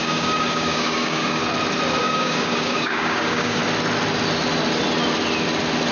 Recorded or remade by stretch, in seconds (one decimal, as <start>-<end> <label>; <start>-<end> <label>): 0.0-1.4 remade; 1.4-2.0 recorded; 2.0-3.6 remade; 3.6-5.9 recorded